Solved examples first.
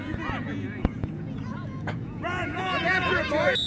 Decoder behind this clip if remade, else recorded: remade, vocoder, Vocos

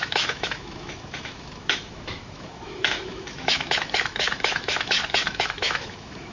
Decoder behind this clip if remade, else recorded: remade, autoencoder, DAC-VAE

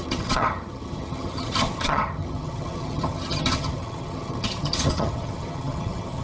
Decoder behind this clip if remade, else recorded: remade, vocoder, HiFi-GAN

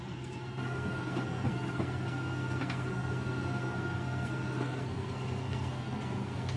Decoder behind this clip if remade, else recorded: remade, codec, SNAC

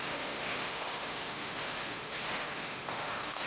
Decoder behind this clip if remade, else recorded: remade, autoencoder, DAC-VAE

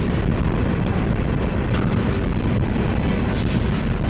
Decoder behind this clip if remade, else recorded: recorded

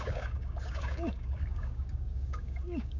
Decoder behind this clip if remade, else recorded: remade, codec, DAC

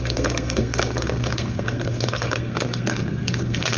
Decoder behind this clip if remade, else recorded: remade, codec, SNAC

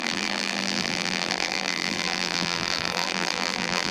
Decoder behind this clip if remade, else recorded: remade, vocoder, BigVGAN v2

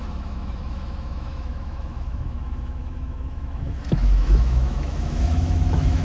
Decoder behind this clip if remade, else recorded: remade, autoencoder, DAC-VAE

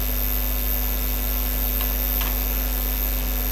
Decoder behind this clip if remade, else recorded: recorded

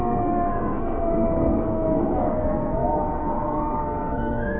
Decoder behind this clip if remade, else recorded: remade, codec, SNAC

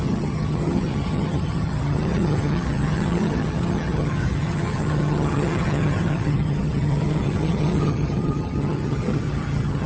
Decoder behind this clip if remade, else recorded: remade, vocoder, HiFi-GAN